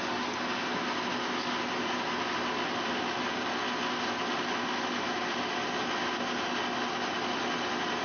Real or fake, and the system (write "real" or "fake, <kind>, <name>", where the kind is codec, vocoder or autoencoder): real